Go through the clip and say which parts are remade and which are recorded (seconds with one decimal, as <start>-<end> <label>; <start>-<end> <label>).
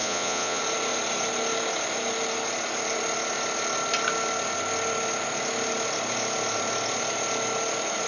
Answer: 0.0-0.6 remade; 0.6-8.1 recorded